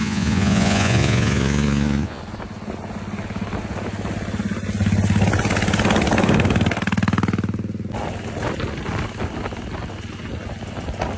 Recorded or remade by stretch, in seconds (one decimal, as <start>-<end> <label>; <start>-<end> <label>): 0.0-2.2 remade; 2.2-11.2 recorded